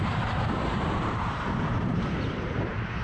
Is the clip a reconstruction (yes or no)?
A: yes